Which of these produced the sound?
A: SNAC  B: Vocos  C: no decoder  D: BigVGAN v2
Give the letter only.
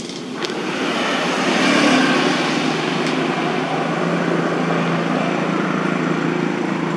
C